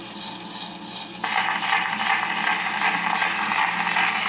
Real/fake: real